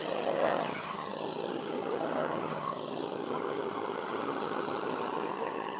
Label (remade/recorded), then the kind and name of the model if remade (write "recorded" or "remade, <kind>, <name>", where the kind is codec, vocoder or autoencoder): remade, vocoder, HiFi-GAN